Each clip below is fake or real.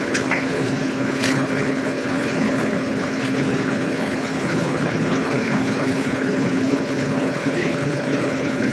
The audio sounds fake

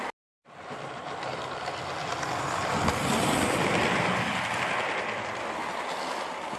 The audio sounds real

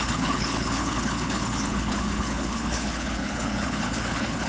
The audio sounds fake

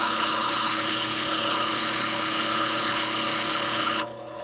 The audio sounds fake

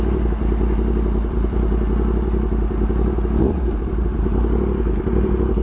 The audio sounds real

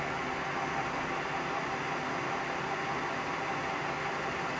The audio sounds real